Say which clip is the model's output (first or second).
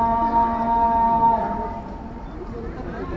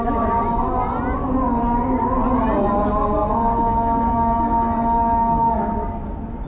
first